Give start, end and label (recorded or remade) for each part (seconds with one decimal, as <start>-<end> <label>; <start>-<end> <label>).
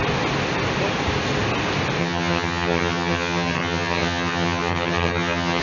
0.0-2.0 recorded; 2.0-5.6 remade